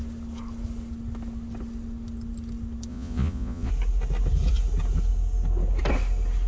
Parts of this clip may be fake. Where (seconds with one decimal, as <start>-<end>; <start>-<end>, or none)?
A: 2.9-3.7